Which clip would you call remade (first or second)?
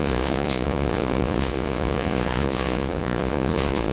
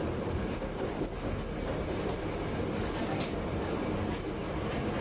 first